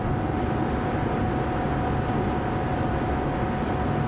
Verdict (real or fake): real